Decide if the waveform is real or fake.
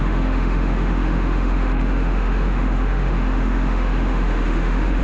fake